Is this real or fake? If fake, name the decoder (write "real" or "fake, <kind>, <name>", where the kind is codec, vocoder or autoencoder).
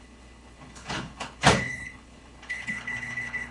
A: fake, codec, HILCodec